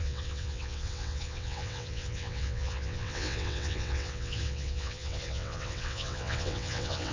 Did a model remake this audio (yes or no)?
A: yes